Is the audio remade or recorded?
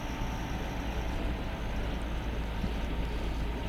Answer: recorded